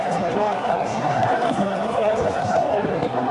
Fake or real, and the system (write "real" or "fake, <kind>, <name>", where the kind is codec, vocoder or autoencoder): fake, codec, SNAC